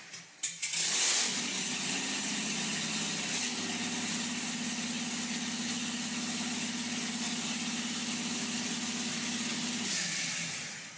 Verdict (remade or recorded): recorded